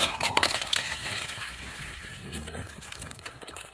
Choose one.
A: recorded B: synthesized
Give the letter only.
B